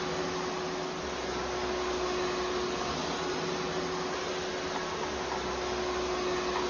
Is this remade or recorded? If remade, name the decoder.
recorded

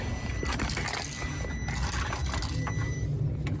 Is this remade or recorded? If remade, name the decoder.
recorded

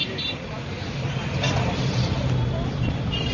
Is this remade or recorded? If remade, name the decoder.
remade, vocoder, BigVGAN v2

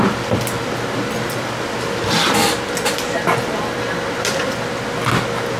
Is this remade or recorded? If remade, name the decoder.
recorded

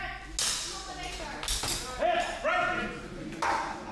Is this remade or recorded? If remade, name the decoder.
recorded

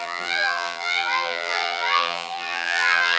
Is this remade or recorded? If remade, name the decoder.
remade, vocoder, BigVGAN v2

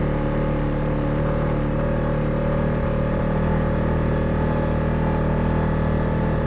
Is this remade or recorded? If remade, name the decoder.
recorded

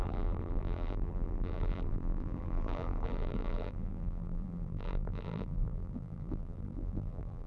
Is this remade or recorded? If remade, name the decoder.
remade, vocoder, BigVGAN v2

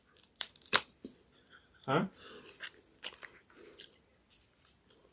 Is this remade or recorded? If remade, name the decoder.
remade, vocoder, BigVGAN v2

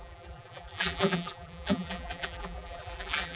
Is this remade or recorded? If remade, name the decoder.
remade, vocoder, BigVGAN v2